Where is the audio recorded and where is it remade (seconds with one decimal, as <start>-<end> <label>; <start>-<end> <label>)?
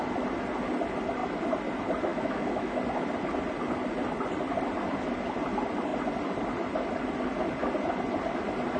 0.0-2.1 recorded; 2.1-2.8 remade; 2.8-8.8 recorded